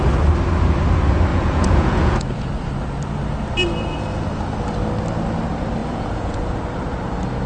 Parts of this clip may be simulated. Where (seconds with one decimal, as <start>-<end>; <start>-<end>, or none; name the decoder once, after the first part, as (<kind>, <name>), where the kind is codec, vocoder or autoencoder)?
1.3-2.5 (vocoder, Vocos); 5.8-6.6